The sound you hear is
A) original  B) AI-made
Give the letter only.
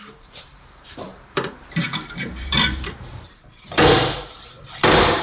B